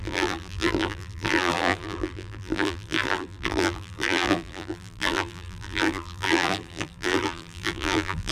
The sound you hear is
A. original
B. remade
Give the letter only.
B